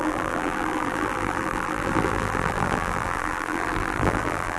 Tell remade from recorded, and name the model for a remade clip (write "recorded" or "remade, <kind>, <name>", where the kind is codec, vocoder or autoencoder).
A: remade, vocoder, BigVGAN v2